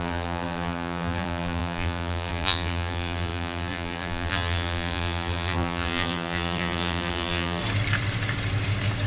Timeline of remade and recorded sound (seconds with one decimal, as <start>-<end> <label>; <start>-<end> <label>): 0.0-7.6 remade; 7.6-9.1 recorded